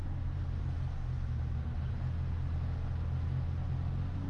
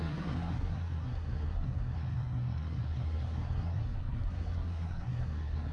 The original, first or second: first